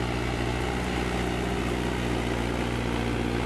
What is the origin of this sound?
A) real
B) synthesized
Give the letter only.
A